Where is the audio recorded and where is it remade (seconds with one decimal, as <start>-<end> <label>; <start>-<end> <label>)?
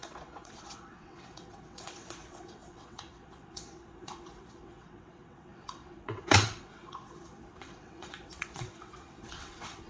0.0-9.9 remade